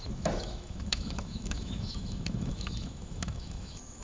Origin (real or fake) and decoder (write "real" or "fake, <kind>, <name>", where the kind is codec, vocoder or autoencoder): fake, autoencoder, DAC-VAE